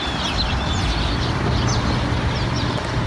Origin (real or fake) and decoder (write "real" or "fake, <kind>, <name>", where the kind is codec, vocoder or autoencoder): real